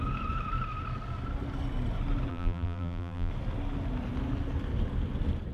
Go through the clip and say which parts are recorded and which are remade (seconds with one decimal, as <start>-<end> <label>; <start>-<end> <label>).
0.0-2.3 recorded; 2.3-3.3 remade; 3.3-5.5 recorded